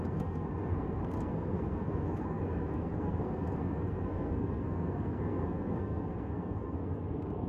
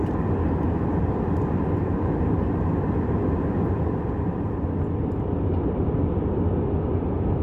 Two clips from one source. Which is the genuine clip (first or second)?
second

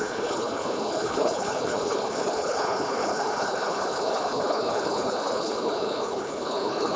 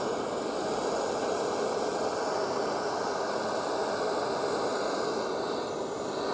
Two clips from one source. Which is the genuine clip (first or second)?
second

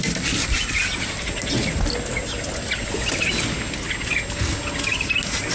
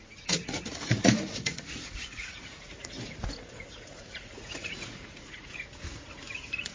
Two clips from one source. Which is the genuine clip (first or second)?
first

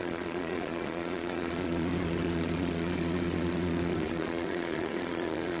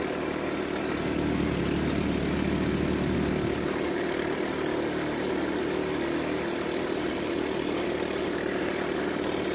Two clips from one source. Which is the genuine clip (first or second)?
second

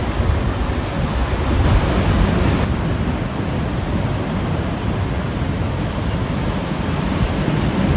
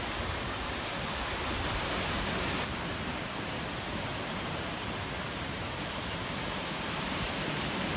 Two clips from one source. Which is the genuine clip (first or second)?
first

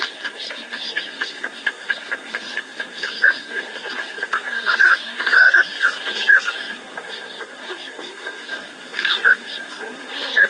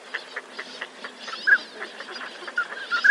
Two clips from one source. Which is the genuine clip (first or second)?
second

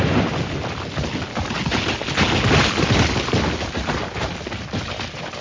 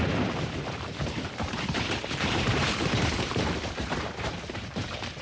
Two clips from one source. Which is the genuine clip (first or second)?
first